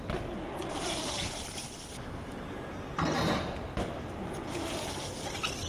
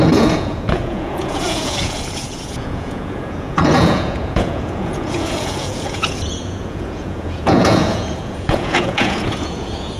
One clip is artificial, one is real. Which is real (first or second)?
first